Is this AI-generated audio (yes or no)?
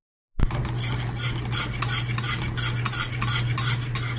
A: no